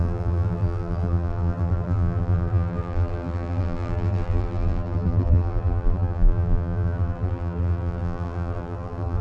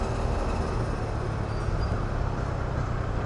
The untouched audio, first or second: second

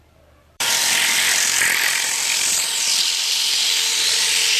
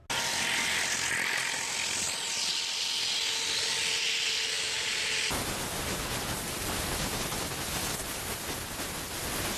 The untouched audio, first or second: second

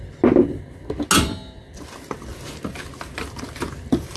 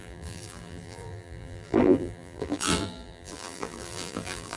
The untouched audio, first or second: first